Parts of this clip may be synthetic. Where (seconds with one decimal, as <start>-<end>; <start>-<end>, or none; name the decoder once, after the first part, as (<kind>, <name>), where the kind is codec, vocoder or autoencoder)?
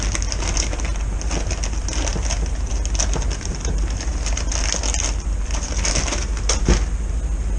none